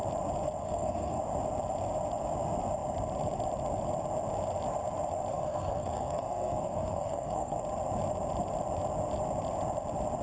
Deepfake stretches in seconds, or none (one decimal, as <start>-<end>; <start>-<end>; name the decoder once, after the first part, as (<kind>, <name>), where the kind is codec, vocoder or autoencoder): 0.6-1.2 (codec, SNAC); 5.3-7.6